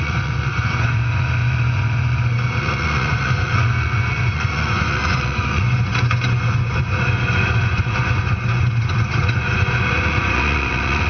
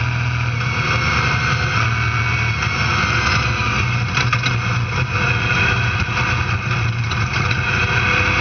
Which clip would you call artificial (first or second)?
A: first